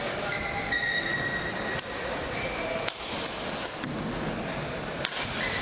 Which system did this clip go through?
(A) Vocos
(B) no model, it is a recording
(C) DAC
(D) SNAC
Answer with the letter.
B